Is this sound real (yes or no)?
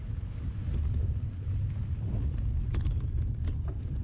yes